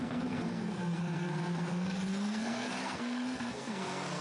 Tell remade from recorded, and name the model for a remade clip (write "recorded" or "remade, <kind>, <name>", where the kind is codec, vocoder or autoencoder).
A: remade, codec, SNAC